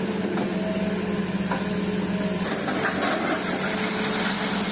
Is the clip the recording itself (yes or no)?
yes